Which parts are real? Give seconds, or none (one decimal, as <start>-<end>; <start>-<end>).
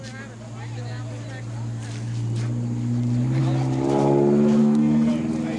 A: 0.0-4.6; 5.1-5.6